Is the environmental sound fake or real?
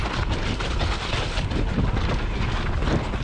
real